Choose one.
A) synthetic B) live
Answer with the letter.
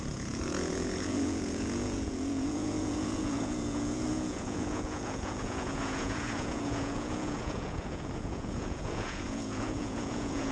A